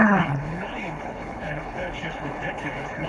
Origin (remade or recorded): remade